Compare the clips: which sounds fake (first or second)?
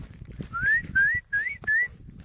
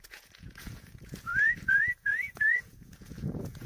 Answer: second